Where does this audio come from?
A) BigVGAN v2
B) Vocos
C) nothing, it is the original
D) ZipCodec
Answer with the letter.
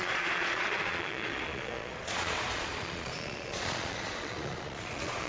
B